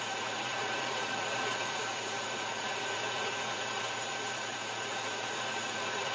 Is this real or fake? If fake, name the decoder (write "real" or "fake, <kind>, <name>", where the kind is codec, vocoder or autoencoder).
fake, vocoder, Vocos